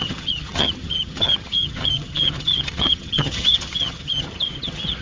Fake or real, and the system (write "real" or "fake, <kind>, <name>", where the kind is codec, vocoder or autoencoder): fake, vocoder, HiFi-GAN